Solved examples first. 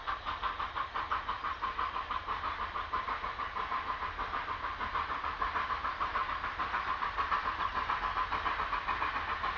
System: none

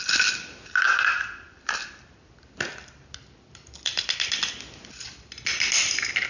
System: none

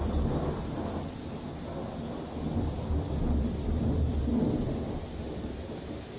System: none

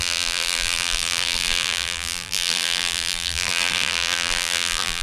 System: vocoder, BigVGAN v2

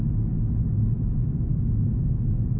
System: none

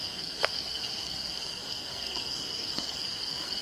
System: codec, SNAC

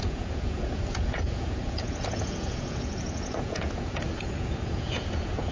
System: vocoder, Vocos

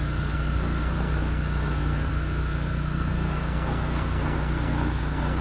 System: codec, SNAC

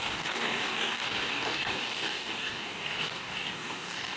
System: codec, DAC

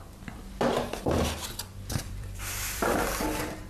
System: vocoder, BigVGAN v2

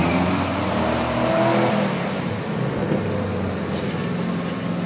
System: none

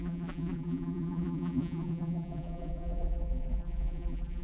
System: vocoder, BigVGAN v2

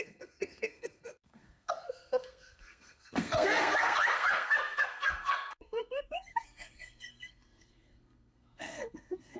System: codec, SNAC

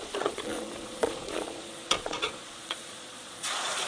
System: vocoder, Vocos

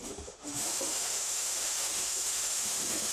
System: autoencoder, DAC-VAE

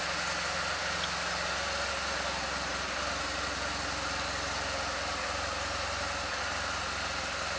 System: none